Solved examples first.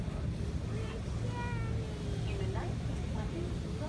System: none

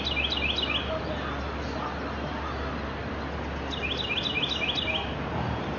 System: none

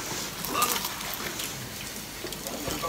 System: none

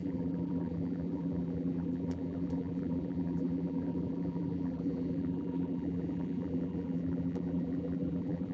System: vocoder, BigVGAN v2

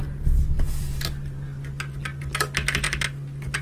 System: none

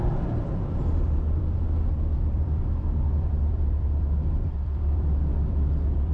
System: vocoder, BigVGAN v2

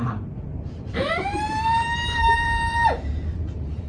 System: vocoder, BigVGAN v2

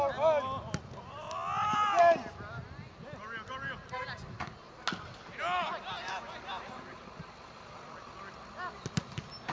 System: none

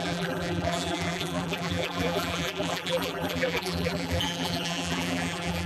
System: vocoder, BigVGAN v2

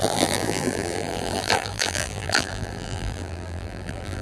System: vocoder, BigVGAN v2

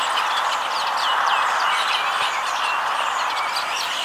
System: none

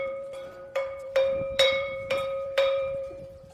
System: vocoder, BigVGAN v2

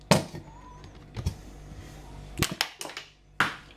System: none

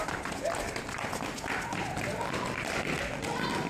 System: none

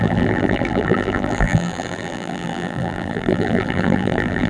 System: vocoder, BigVGAN v2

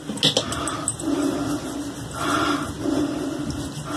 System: none